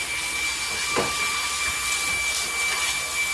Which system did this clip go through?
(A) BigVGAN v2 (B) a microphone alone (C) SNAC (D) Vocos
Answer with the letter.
B